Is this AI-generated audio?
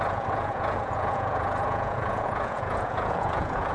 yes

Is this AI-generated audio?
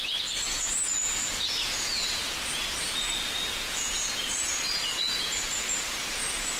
yes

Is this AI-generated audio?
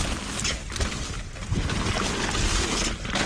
no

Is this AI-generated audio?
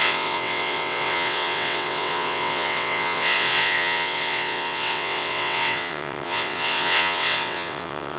yes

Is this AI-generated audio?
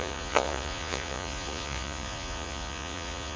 yes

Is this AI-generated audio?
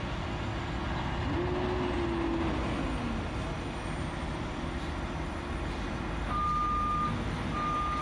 no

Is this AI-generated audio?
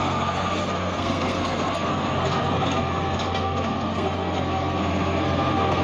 yes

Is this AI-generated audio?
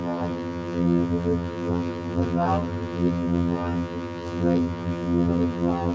yes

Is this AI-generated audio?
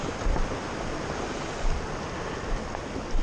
no